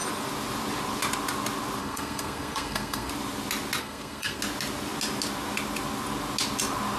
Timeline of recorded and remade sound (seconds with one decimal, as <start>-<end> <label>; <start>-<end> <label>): 0.0-1.8 recorded; 1.8-3.1 remade; 3.1-3.8 recorded; 3.8-4.4 remade; 4.4-7.0 recorded